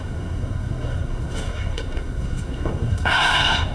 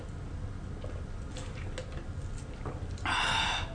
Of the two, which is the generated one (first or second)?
first